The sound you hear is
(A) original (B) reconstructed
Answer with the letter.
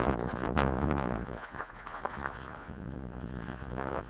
B